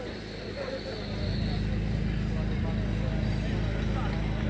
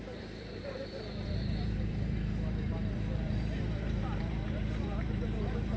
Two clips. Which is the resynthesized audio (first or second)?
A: second